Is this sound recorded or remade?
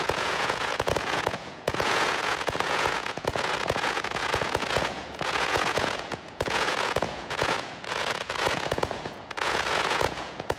remade